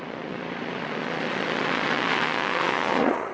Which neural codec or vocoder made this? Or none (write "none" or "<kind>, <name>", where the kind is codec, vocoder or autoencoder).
vocoder, Vocos